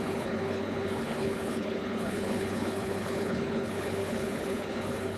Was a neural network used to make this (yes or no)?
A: yes